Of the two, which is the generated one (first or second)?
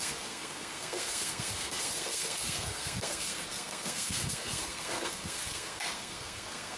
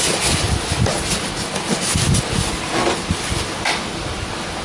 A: first